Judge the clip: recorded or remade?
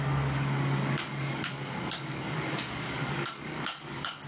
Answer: remade